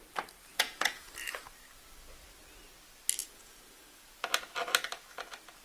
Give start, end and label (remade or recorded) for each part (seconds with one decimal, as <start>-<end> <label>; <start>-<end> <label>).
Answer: 0.0-0.5 recorded; 0.5-1.1 remade; 1.1-3.2 recorded; 3.2-4.1 remade; 4.1-5.6 recorded

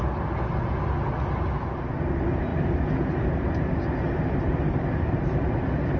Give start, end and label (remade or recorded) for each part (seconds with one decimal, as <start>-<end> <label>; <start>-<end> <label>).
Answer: 0.0-6.0 recorded

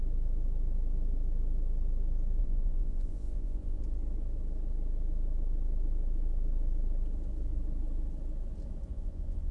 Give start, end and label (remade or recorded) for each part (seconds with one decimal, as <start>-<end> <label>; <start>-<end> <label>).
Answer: 0.0-2.4 recorded; 2.4-3.8 remade; 3.8-8.9 recorded; 8.9-9.5 remade

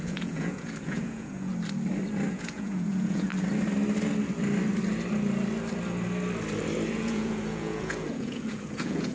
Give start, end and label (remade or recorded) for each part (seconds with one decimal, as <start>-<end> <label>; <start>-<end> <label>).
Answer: 0.0-1.5 remade; 1.5-2.3 recorded; 2.3-3.3 remade; 3.3-6.9 recorded; 6.9-9.1 remade

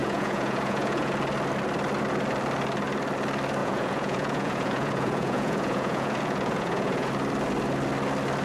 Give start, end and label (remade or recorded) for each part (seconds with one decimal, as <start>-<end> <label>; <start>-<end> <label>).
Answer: 0.0-1.1 remade; 1.1-3.6 recorded; 3.6-7.1 remade; 7.1-8.4 recorded

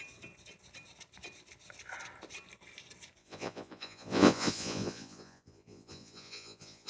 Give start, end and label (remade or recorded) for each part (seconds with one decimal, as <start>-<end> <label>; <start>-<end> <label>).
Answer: 0.0-3.2 recorded; 3.2-6.9 remade

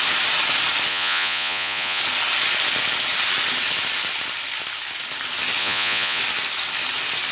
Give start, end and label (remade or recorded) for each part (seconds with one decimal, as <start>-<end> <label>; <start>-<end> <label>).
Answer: 0.0-0.9 recorded; 0.9-2.0 remade; 2.0-5.6 recorded; 5.6-6.2 remade; 6.2-7.3 recorded

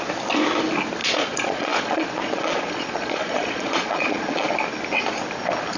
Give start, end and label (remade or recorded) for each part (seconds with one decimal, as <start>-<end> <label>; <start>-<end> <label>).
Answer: 0.0-1.0 recorded; 1.0-4.5 remade; 4.5-5.8 recorded